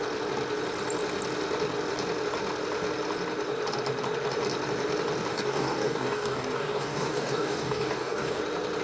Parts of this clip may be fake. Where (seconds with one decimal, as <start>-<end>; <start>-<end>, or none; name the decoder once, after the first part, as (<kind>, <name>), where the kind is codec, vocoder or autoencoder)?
5.3-8.4 (codec, DAC)